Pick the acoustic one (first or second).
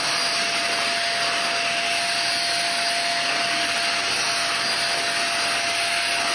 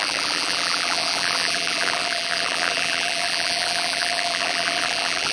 first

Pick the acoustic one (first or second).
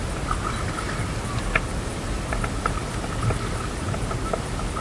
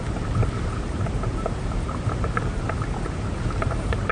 first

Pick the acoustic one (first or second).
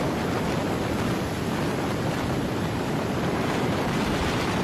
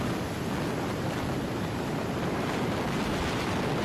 second